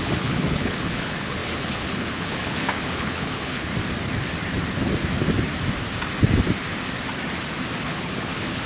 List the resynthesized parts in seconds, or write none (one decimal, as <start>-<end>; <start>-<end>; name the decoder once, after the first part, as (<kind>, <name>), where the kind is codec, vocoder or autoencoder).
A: 0.0-3.7 (codec, HILCodec); 7.8-8.7